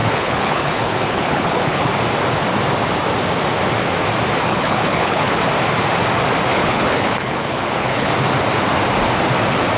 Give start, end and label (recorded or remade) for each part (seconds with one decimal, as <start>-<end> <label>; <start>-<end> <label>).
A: 0.0-1.9 remade; 1.9-4.5 recorded; 4.5-5.4 remade; 5.4-6.5 recorded; 6.5-8.1 remade; 8.1-9.8 recorded

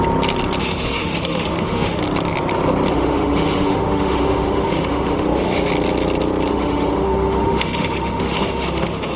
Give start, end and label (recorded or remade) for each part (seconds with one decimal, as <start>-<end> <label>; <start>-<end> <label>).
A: 0.0-0.6 recorded; 0.6-2.0 remade; 2.0-2.9 recorded; 2.9-5.7 remade; 5.7-6.5 recorded; 6.5-9.2 remade

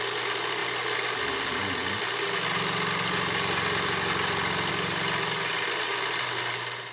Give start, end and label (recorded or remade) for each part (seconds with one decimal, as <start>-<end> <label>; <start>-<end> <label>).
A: 0.0-6.9 recorded

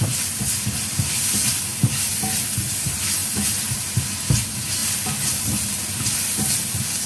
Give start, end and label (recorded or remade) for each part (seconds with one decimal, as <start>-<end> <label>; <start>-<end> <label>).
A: 0.0-7.1 recorded

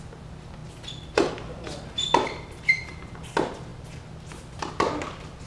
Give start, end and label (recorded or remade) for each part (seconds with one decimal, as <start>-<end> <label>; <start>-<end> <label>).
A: 0.0-5.5 recorded